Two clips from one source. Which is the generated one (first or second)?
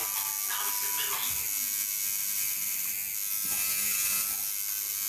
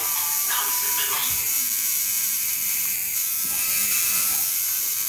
second